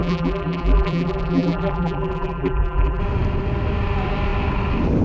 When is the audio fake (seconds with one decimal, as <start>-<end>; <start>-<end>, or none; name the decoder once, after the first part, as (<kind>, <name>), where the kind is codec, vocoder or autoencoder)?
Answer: 0.0-3.0 (vocoder, BigVGAN v2)